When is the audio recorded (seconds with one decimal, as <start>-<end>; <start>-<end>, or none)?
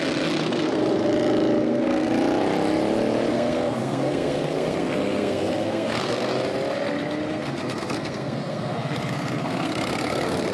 0.8-1.6; 2.1-3.3; 6.3-7.3